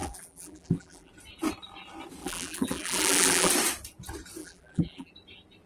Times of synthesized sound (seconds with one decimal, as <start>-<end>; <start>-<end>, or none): 0.0-1.1; 2.2-3.5; 4.4-5.1